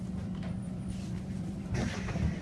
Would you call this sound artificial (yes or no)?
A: yes